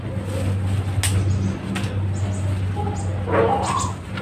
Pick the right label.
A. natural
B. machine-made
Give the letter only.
A